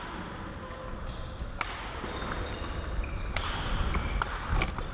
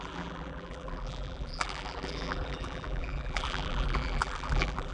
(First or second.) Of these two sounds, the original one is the first